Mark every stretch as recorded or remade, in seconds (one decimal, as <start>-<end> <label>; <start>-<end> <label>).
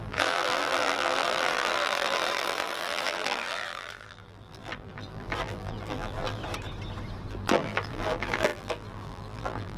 0.0-6.4 remade; 6.4-7.3 recorded; 7.3-9.8 remade